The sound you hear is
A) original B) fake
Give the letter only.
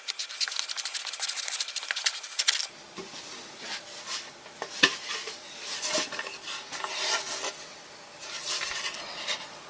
A